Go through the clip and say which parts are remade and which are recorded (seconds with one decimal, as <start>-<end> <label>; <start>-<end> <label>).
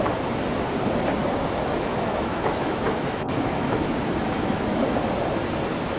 0.0-1.2 recorded; 1.2-4.8 remade; 4.8-6.0 recorded